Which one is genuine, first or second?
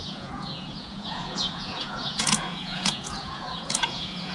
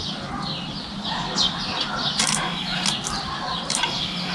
second